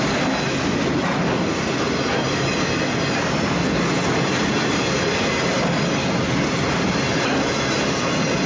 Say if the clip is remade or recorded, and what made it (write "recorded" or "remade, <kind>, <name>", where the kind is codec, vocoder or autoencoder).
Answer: recorded